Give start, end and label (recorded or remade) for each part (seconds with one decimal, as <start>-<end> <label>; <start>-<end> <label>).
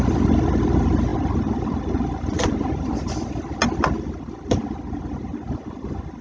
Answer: 0.0-6.2 recorded